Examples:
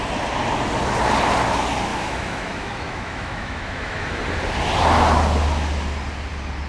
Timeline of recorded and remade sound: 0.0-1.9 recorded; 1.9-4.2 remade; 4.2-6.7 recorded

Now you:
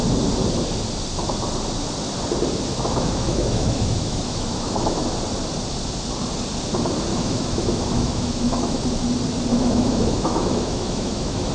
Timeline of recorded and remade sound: 0.0-2.7 recorded; 2.7-5.0 remade; 5.0-7.1 recorded; 7.1-8.8 remade; 8.8-9.5 recorded; 9.5-11.5 remade

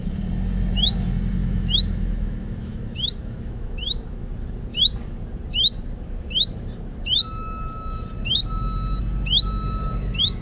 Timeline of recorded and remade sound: 0.0-1.4 recorded; 1.4-4.3 remade; 4.3-10.4 recorded

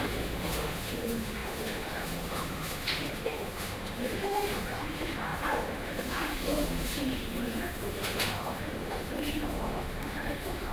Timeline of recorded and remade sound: 0.0-10.7 remade

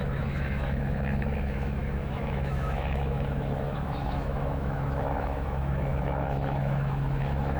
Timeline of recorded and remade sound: 0.0-7.6 remade

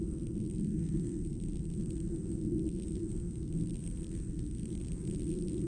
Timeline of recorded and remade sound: 0.0-5.7 remade